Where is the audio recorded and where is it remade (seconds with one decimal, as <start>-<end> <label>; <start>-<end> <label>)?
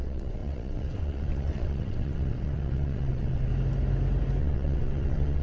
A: 0.0-3.5 remade; 3.5-4.4 recorded; 4.4-5.4 remade